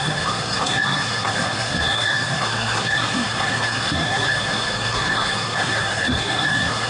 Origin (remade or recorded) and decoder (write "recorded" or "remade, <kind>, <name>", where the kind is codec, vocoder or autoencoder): remade, codec, SNAC